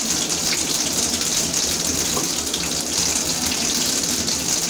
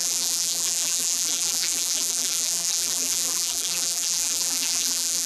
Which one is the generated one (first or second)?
second